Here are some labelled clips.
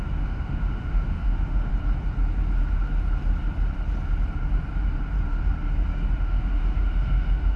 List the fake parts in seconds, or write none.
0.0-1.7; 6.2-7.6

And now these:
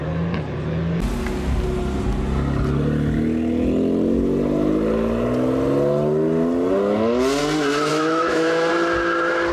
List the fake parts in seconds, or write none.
7.9-8.7